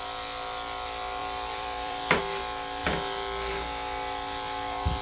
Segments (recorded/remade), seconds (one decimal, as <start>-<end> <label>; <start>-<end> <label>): 0.0-1.2 recorded; 1.2-2.2 remade; 2.2-5.0 recorded